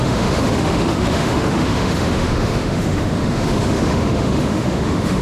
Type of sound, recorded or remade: remade